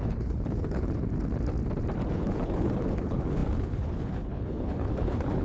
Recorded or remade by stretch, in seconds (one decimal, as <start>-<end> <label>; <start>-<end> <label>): 0.0-1.1 remade; 1.1-2.1 recorded; 2.1-5.4 remade